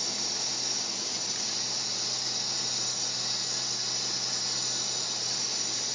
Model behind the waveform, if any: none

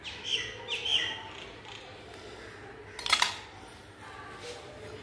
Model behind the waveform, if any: none